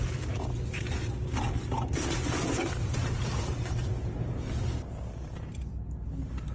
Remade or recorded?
recorded